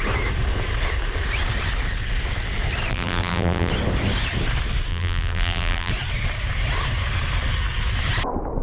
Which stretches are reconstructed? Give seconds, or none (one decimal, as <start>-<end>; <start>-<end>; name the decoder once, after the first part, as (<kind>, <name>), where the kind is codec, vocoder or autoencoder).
2.9-3.7 (vocoder, BigVGAN v2); 4.9-5.9